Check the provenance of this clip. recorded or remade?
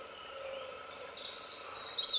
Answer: recorded